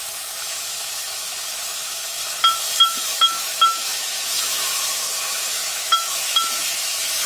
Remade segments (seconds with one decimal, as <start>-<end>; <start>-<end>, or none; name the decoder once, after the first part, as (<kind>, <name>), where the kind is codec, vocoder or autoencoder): 0.0-2.2 (autoencoder, DAC-VAE); 2.8-7.3